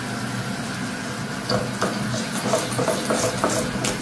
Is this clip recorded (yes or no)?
yes